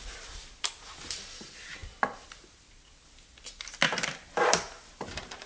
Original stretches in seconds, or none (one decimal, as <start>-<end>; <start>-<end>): 1.8-3.6